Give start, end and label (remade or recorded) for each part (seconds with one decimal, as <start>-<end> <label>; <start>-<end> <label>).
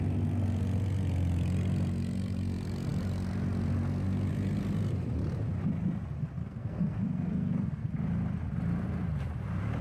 0.0-6.4 recorded; 6.4-7.9 remade; 7.9-9.8 recorded